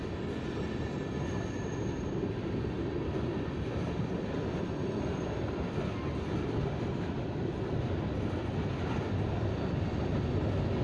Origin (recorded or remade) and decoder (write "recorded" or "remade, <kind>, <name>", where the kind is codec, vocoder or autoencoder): recorded